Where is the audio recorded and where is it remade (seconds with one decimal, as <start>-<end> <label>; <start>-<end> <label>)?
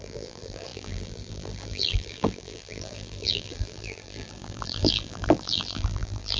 0.0-6.4 remade